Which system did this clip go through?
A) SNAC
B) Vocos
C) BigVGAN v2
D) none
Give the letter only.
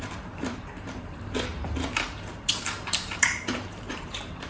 C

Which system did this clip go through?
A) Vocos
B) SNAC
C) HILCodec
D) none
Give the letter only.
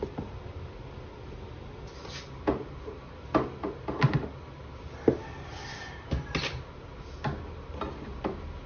D